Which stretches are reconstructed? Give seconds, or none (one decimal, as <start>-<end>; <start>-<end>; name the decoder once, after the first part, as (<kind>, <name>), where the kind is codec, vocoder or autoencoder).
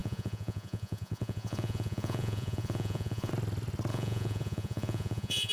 0.0-3.3 (vocoder, Vocos); 3.9-5.5